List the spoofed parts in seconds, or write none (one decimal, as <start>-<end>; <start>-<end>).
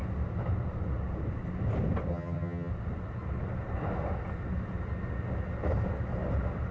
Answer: 2.1-2.7